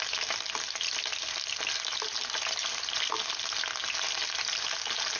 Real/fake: real